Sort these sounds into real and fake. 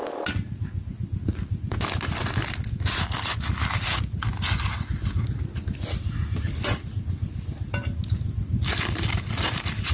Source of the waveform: real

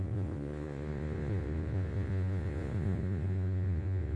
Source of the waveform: fake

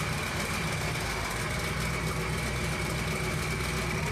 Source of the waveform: real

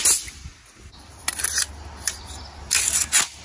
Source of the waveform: real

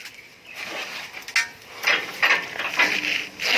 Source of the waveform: real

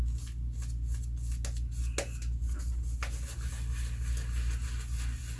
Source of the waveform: real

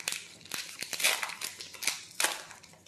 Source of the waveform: real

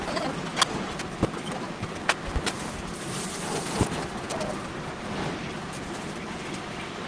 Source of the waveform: real